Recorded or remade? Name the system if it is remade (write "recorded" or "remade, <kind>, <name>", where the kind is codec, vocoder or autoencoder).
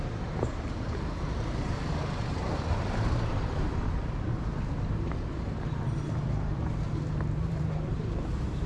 remade, vocoder, BigVGAN v2